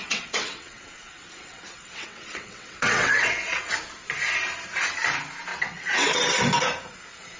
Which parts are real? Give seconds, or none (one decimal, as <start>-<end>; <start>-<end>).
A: 3.7-5.5; 6.2-7.4